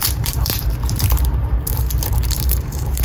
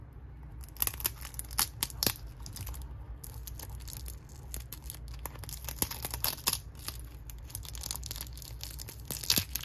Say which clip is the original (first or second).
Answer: second